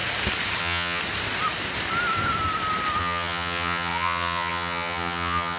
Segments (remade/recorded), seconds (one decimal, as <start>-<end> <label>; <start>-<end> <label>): 0.0-0.6 recorded; 0.6-1.0 remade; 1.0-3.0 recorded; 3.0-5.6 remade